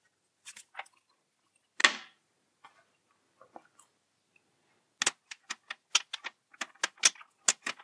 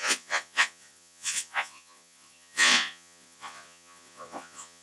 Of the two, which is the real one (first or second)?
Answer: first